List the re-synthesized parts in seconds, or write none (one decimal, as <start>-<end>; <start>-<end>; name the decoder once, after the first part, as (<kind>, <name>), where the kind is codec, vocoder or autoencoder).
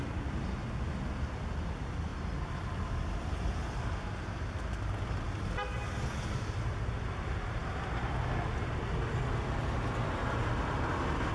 7.6-8.2 (vocoder, BigVGAN v2)